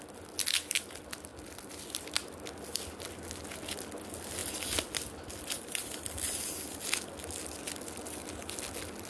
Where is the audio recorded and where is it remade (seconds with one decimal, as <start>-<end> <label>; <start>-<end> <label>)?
0.0-9.1 recorded